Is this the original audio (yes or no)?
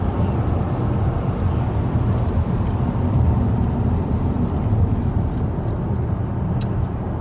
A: yes